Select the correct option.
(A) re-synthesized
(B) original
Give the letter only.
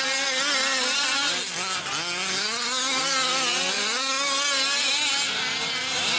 B